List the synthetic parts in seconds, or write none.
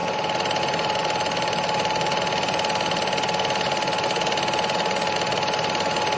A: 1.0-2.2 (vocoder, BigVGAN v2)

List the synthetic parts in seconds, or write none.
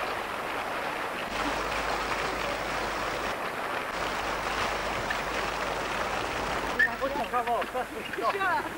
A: 1.2-1.8 (vocoder, BigVGAN v2); 4.8-5.5